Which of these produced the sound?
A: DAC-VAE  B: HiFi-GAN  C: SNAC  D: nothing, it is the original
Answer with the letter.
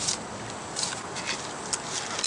D